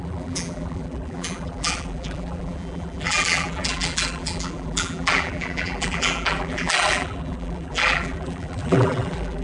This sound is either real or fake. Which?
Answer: fake